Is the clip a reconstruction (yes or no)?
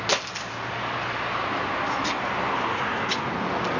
no